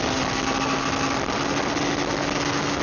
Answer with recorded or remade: recorded